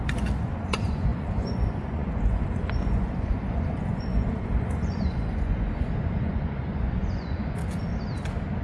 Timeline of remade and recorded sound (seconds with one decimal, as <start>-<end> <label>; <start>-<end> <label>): 0.0-7.6 remade; 7.6-8.6 recorded